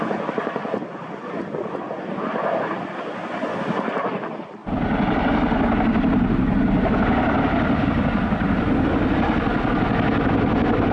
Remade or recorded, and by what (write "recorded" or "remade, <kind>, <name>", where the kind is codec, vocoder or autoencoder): recorded